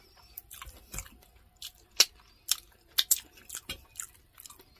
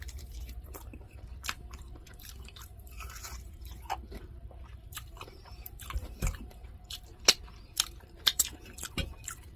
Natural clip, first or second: first